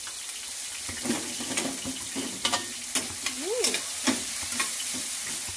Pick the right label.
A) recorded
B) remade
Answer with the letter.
A